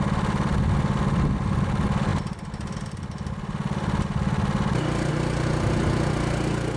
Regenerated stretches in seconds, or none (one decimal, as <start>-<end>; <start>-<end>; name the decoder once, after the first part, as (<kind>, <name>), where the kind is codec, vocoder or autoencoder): none